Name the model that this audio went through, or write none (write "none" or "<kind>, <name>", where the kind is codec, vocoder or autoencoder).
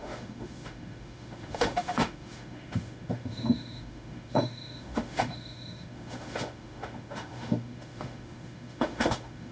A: autoencoder, DAC-VAE